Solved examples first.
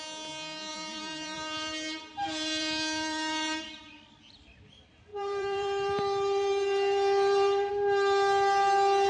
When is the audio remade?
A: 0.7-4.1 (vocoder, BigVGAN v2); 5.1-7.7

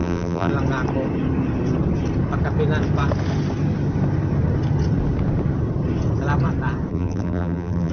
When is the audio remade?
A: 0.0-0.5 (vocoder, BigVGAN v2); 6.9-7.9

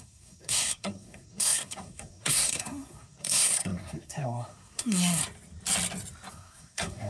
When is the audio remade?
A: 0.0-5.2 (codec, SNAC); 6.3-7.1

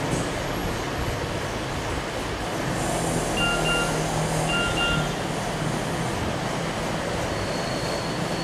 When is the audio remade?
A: none